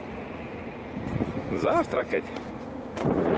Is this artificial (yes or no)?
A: yes